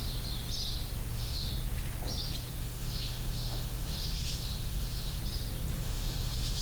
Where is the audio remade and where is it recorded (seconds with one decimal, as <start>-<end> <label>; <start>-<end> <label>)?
0.0-1.1 recorded; 1.1-1.5 remade; 1.5-2.6 recorded; 2.6-5.2 remade; 5.2-5.8 recorded; 5.8-6.6 remade